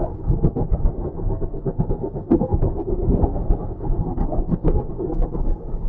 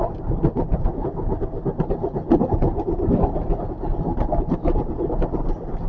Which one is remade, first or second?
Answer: first